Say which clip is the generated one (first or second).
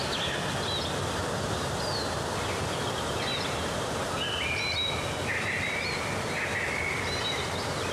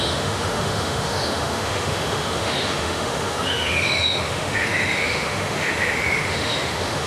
second